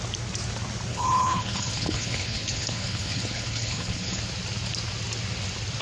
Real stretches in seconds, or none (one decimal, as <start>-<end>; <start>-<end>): 0.0-0.9; 4.2-5.8